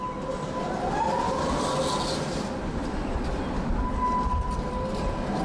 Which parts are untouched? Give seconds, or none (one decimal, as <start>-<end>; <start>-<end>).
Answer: 0.0-5.4